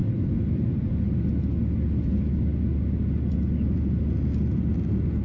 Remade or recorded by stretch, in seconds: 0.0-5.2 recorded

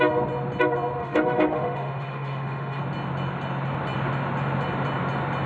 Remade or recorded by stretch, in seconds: 0.0-1.0 recorded; 1.0-2.8 remade; 2.8-5.5 recorded

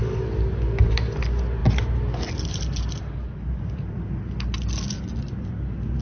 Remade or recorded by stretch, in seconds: 0.0-6.0 recorded

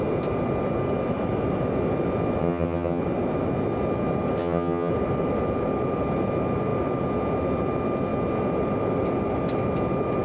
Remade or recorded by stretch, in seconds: 0.0-2.4 recorded; 2.4-3.0 remade; 3.0-4.4 recorded; 4.4-4.9 remade; 4.9-10.2 recorded

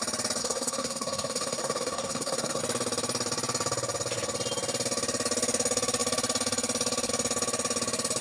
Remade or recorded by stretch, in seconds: 0.0-0.4 recorded; 0.4-2.6 remade; 2.6-8.2 recorded

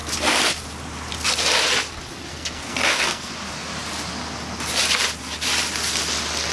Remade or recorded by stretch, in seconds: 0.0-2.3 recorded; 2.3-3.3 remade; 3.3-6.5 recorded

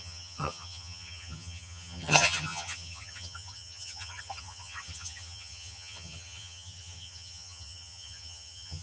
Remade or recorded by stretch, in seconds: 0.0-8.8 remade